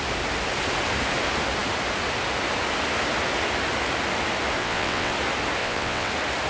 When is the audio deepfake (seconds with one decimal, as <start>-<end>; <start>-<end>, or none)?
4.6-5.1; 5.6-6.1